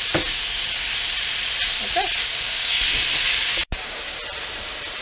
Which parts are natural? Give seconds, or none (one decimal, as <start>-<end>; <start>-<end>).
0.0-2.3; 2.8-3.3; 4.0-5.0